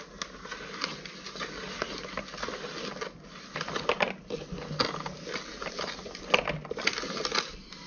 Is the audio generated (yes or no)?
no